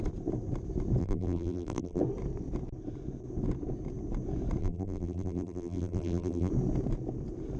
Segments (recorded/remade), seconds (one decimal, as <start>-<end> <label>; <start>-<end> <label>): 0.0-1.0 recorded; 1.0-2.0 remade; 2.0-4.6 recorded; 4.6-6.5 remade; 6.5-7.6 recorded